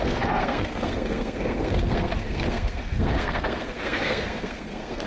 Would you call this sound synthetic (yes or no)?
yes